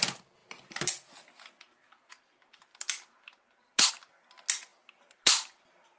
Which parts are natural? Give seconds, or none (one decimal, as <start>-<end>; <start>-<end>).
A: 0.0-6.0